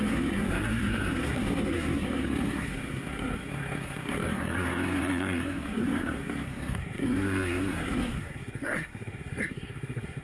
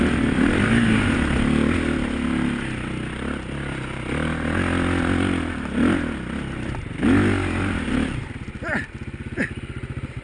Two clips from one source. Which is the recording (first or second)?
second